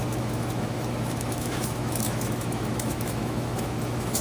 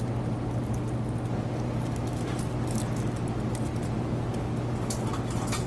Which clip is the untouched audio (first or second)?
second